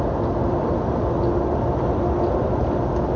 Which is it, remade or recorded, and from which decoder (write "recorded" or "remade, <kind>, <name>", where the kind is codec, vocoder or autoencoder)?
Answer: recorded